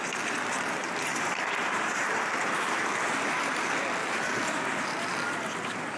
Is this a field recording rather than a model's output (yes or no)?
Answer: yes